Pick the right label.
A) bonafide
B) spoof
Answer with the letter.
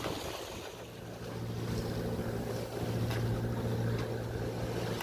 A